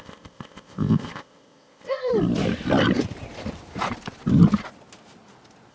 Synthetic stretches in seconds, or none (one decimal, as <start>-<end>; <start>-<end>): 0.0-2.1